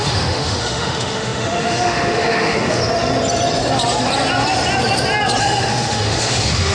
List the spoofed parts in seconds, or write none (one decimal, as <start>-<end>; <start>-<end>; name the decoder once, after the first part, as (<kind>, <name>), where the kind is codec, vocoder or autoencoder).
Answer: 0.0-2.8 (autoencoder, DAC-VAE); 5.4-6.7